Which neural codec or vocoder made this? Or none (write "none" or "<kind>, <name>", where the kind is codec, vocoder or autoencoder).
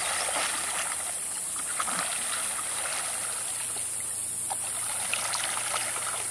none